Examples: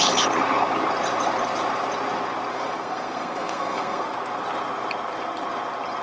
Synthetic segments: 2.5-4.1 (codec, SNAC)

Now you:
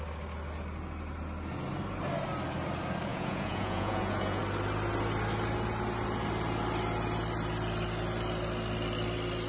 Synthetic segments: 3.1-4.4 (vocoder, Vocos)

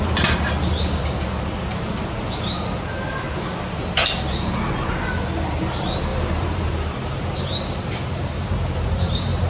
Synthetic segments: 6.1-9.5 (vocoder, BigVGAN v2)

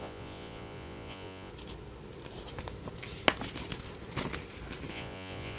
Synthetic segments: 0.0-1.5 (vocoder, Vocos); 4.9-5.6

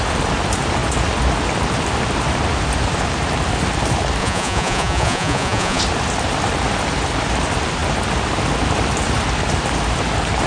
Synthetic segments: 4.2-5.8 (vocoder, Vocos)

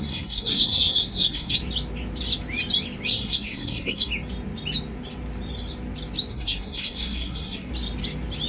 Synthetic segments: 0.0-1.6 (codec, SNAC); 3.1-4.1; 6.3-7.7

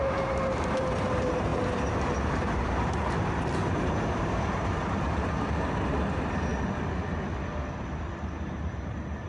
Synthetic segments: 0.0-6.5 (vocoder, BigVGAN v2); 8.2-9.3

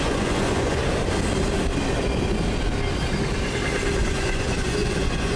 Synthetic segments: 0.0-0.8 (vocoder, Vocos); 4.0-5.4